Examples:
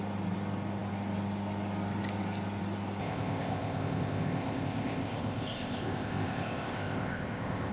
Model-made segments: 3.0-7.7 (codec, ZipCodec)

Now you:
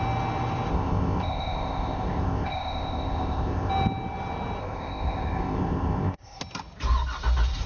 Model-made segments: 0.7-3.7 (codec, ZipCodec); 4.6-6.4